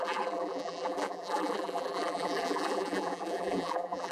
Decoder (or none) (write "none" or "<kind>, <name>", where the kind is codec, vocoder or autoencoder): vocoder, BigVGAN v2